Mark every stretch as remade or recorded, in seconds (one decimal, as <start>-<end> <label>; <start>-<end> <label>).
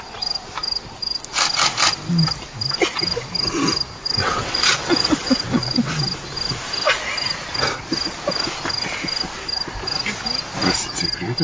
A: 0.0-4.2 recorded; 4.2-5.9 remade; 5.9-11.4 recorded